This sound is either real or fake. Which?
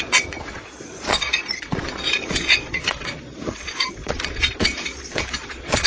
fake